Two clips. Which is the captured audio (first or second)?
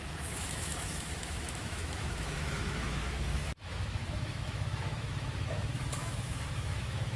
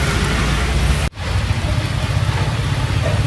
second